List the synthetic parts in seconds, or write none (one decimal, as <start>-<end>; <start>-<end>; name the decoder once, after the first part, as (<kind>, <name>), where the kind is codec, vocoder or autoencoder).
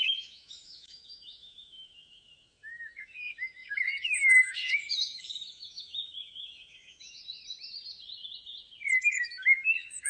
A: 0.0-7.2 (autoencoder, DAC-VAE); 9.0-10.1